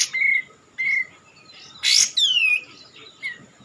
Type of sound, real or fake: real